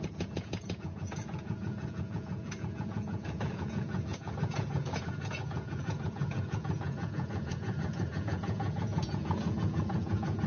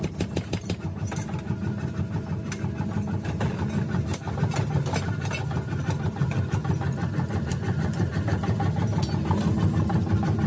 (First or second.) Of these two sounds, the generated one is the first